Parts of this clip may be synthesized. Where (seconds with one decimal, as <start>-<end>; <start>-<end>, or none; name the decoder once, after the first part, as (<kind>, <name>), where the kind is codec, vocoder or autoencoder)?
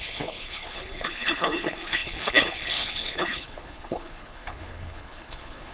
0.0-5.7 (codec, HILCodec)